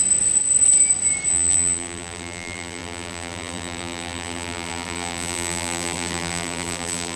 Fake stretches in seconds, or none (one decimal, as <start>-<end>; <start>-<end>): 1.3-7.2